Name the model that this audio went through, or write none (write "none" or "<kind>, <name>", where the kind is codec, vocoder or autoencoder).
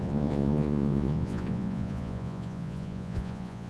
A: vocoder, Vocos